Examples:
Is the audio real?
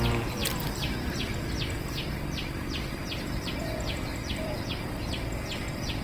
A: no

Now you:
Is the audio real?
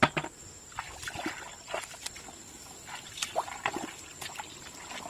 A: yes